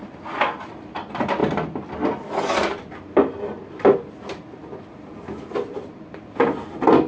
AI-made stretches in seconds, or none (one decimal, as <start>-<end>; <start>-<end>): none